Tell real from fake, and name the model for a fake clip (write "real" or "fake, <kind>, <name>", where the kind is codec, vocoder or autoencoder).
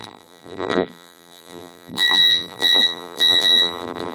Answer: fake, vocoder, BigVGAN v2